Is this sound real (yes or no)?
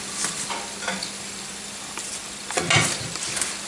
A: yes